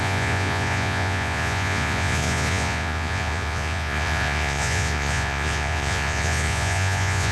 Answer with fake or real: fake